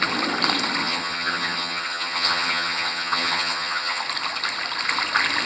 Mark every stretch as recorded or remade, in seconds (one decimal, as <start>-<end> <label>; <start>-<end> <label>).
0.0-0.8 recorded; 0.8-4.0 remade; 4.0-5.5 recorded

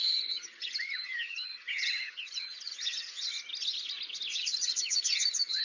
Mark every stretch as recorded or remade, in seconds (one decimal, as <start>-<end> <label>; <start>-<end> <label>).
0.0-3.4 remade; 3.4-4.3 recorded; 4.3-5.6 remade

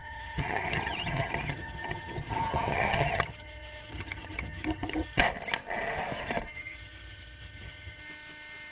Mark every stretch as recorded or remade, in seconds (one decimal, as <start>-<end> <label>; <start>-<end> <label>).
0.0-5.2 remade; 5.2-6.5 recorded; 6.5-8.0 remade; 8.0-8.7 recorded

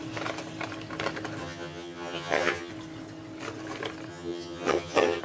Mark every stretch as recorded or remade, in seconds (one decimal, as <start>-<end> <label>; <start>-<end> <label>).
0.0-1.4 recorded; 1.4-2.7 remade; 2.7-4.1 recorded; 4.1-5.2 remade

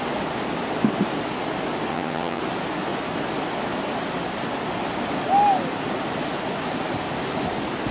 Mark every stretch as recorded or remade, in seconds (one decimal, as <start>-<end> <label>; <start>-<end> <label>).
0.0-1.9 recorded; 1.9-2.4 remade; 2.4-7.9 recorded

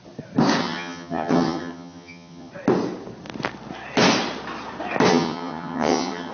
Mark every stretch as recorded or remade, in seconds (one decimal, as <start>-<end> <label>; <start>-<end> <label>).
0.0-0.6 recorded; 0.6-2.5 remade; 2.5-5.1 recorded; 5.1-6.3 remade

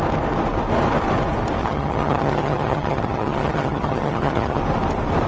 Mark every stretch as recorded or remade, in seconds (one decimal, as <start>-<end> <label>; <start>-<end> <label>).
0.0-1.6 recorded; 1.6-4.6 remade; 4.6-5.3 recorded